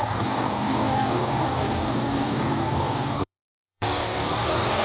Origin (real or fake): fake